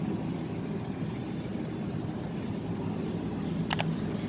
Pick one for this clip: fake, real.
real